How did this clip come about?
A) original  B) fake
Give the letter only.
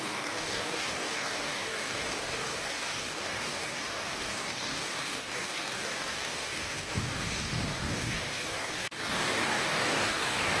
B